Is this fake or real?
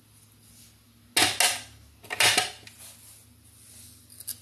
real